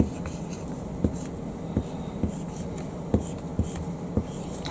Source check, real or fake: real